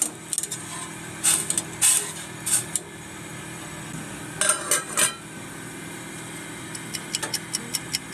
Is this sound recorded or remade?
recorded